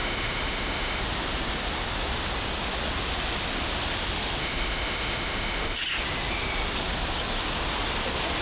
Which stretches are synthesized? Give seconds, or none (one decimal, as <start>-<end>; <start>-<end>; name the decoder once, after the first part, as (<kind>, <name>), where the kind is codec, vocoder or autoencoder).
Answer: 0.0-1.0 (autoencoder, DAC-VAE); 4.4-5.8